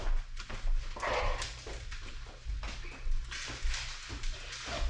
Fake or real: real